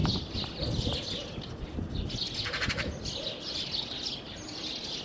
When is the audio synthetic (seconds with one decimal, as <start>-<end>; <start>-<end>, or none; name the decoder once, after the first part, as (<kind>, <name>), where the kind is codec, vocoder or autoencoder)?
none